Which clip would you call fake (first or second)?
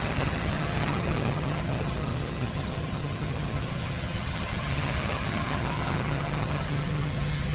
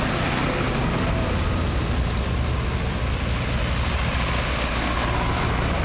first